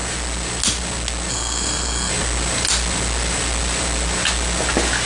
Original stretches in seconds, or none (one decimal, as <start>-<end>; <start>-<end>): 0.0-1.3; 2.1-5.1